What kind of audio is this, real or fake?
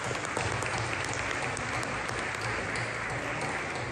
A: real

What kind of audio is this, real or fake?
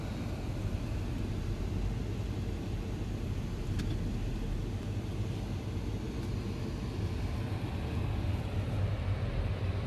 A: real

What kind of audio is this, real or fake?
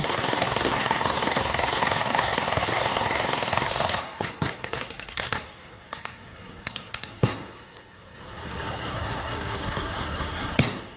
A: fake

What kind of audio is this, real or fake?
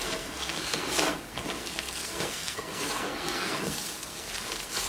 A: fake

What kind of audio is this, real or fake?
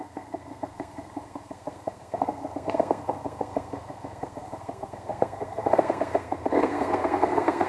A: fake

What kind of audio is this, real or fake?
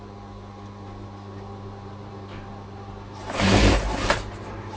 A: fake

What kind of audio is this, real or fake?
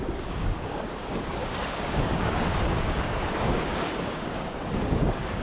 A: fake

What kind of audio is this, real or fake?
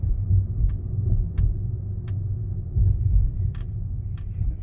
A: real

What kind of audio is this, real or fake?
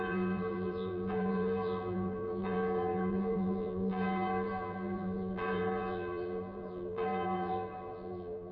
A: fake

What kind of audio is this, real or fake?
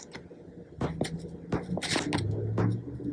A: real